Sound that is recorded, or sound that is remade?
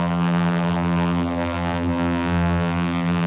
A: remade